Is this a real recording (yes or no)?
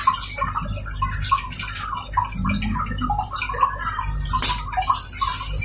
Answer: yes